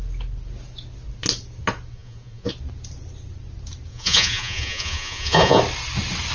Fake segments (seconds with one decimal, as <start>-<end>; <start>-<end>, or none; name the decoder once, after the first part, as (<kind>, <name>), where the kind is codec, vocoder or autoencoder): 1.9-2.5 (vocoder, Vocos); 3.9-5.6